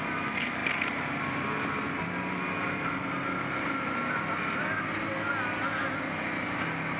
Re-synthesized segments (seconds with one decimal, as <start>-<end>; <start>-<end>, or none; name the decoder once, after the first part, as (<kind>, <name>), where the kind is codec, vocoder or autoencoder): none